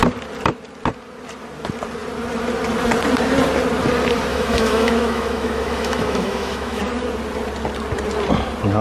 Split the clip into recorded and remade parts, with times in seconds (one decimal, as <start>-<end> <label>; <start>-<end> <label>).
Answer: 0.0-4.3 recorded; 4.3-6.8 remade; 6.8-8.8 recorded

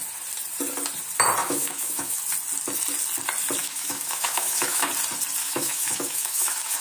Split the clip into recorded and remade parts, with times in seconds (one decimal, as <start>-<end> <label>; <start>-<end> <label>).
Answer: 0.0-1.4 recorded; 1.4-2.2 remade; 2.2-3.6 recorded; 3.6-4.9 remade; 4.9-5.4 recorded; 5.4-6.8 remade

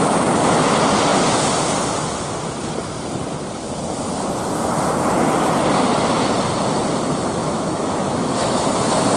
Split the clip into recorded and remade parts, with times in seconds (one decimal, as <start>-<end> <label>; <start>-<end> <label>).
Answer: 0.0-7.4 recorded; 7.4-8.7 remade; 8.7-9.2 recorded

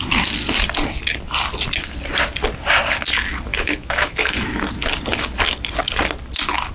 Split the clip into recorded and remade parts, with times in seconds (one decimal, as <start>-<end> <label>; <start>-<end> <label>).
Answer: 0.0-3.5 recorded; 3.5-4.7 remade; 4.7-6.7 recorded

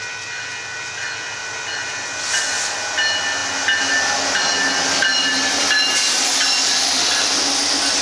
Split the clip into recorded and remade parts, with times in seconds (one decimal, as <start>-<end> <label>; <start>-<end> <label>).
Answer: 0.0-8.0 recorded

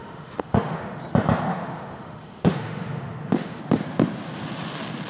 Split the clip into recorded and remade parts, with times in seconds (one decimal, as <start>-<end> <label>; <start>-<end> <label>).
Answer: 0.0-1.0 remade; 1.0-1.5 recorded; 1.5-3.6 remade; 3.6-5.1 recorded

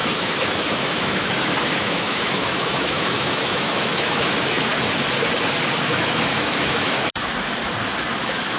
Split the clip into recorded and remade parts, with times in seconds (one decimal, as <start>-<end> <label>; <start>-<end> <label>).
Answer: 0.0-4.7 remade; 4.7-5.8 recorded; 5.8-7.3 remade; 7.3-8.1 recorded; 8.1-8.6 remade

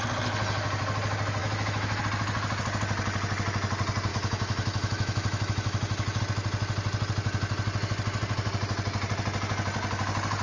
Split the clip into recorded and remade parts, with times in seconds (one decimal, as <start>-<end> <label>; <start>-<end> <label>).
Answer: 0.0-1.4 recorded; 1.4-2.0 remade; 2.0-4.1 recorded; 4.1-6.2 remade; 6.2-10.4 recorded